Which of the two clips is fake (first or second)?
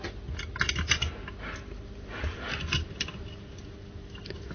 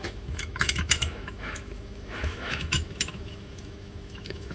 second